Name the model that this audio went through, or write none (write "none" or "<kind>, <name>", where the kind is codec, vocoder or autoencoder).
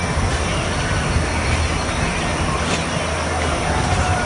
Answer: none